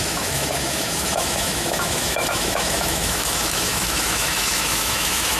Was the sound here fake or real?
fake